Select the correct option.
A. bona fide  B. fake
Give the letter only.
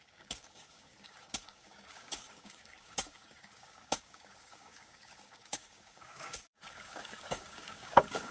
B